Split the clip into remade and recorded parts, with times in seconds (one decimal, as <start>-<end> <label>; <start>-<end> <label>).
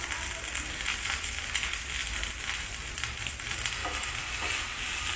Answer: 0.0-5.2 recorded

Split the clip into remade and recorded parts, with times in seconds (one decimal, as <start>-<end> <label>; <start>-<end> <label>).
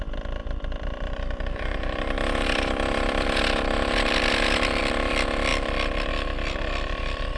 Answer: 0.0-0.4 recorded; 0.4-4.8 remade; 4.8-7.4 recorded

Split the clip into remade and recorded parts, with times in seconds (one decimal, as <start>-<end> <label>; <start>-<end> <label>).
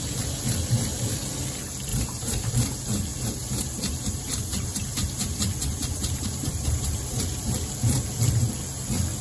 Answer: 0.0-1.9 recorded; 1.9-2.5 remade; 2.5-3.1 recorded; 3.1-8.2 remade; 8.2-9.2 recorded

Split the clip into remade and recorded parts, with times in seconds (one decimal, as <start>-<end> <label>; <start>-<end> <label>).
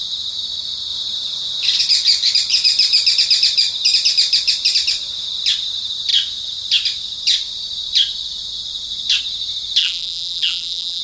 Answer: 0.0-9.8 recorded; 9.8-11.0 remade